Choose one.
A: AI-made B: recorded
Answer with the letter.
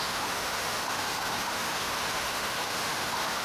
A